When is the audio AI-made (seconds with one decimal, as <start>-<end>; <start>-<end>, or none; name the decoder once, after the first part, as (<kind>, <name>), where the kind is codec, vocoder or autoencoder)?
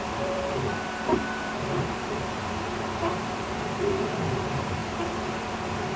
0.0-0.7 (vocoder, BigVGAN v2); 1.4-4.8